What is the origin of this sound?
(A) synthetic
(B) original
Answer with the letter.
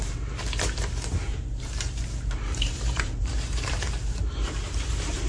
A